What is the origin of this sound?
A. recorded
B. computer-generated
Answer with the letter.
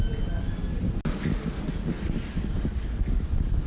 A